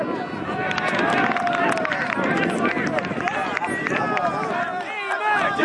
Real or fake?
real